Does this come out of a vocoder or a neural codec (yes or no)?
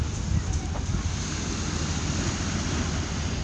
no